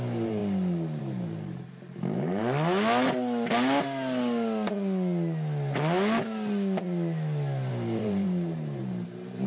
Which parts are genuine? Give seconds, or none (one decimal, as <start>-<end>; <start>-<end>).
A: 0.4-1.0; 2.4-7.7